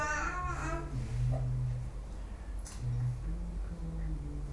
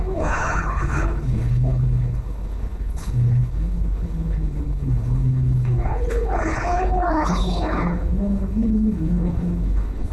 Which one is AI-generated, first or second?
second